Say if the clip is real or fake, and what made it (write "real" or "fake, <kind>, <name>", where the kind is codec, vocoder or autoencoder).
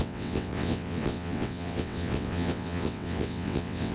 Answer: fake, vocoder, WaveNeXt